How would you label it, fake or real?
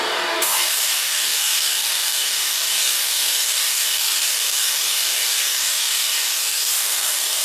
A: fake